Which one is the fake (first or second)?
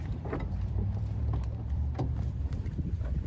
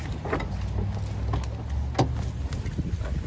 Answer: first